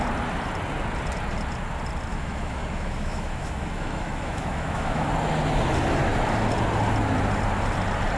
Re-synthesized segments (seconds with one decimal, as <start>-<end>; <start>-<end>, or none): 2.1-5.1